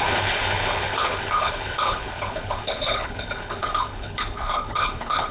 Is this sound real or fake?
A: fake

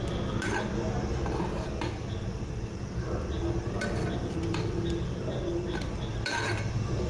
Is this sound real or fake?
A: real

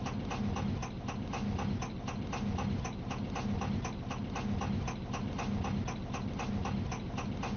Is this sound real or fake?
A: real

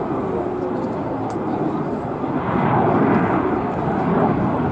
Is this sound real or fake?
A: real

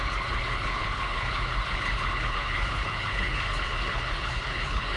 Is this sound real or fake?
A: fake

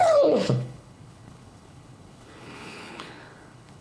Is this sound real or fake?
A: fake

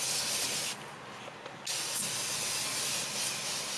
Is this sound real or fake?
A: real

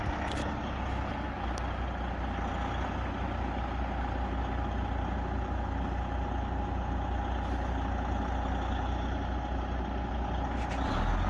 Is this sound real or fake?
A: real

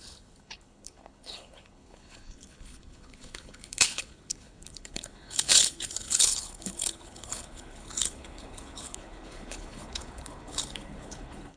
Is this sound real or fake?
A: fake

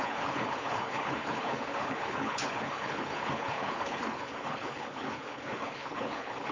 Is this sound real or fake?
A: fake